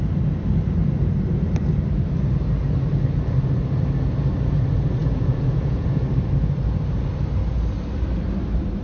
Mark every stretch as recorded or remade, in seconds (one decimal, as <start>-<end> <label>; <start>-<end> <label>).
0.0-5.0 recorded; 5.0-6.0 remade; 6.0-8.8 recorded